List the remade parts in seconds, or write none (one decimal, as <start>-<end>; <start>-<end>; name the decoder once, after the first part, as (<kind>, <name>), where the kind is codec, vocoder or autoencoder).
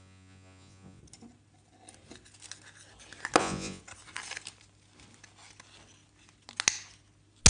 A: 0.0-1.0 (vocoder, Vocos); 3.4-3.8